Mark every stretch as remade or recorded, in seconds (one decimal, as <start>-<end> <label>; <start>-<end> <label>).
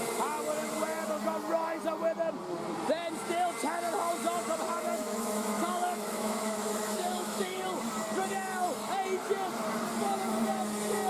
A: 0.0-5.0 recorded; 5.0-7.6 remade; 7.6-11.1 recorded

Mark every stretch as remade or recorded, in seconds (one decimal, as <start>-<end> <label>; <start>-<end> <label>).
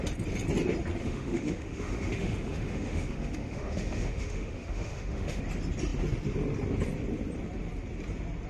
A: 0.0-1.0 recorded; 1.0-5.4 remade; 5.4-8.5 recorded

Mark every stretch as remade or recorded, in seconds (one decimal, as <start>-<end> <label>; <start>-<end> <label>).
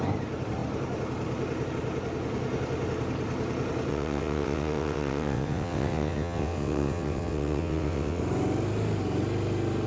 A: 0.0-3.9 recorded; 3.9-8.2 remade; 8.2-9.9 recorded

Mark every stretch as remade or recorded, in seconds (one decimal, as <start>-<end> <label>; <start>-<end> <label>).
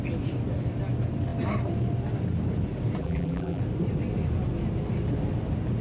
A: 0.0-3.0 recorded; 3.0-3.6 remade; 3.6-5.8 recorded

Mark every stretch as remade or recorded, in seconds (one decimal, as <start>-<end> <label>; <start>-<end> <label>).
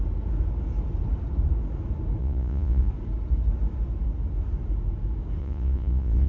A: 0.0-2.2 recorded; 2.2-2.9 remade; 2.9-5.4 recorded; 5.4-6.3 remade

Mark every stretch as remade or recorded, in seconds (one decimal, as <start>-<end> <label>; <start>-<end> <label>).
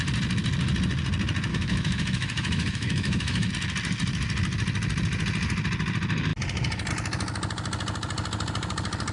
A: 0.0-1.5 recorded; 1.5-3.5 remade; 3.5-9.1 recorded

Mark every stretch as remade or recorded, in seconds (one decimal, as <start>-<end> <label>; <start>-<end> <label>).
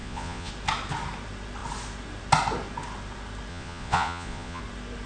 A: 0.0-0.5 remade; 0.5-3.5 recorded; 3.5-4.6 remade; 4.6-5.1 recorded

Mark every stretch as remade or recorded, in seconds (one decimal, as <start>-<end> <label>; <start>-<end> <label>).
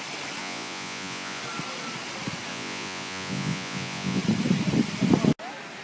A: 0.0-0.4 recorded; 0.4-1.4 remade; 1.4-2.5 recorded; 2.5-4.2 remade; 4.2-5.8 recorded